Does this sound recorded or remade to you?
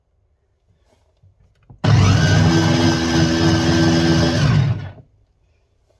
recorded